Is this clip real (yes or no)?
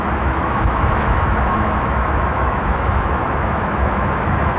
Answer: no